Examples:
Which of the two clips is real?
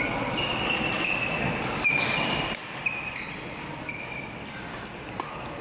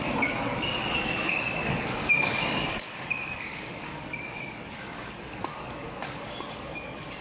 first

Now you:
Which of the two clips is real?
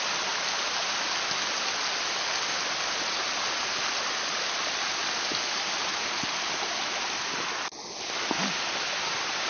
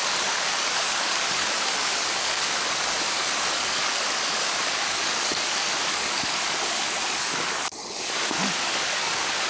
first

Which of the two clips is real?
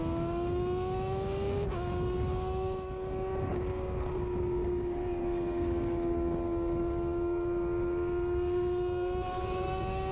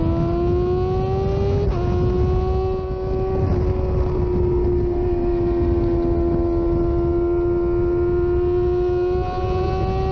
second